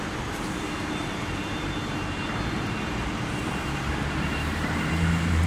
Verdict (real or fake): fake